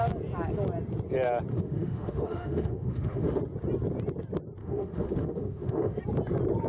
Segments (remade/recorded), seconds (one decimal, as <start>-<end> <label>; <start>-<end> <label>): 0.0-1.5 recorded; 1.5-3.4 remade; 3.4-4.6 recorded; 4.6-6.0 remade; 6.0-6.7 recorded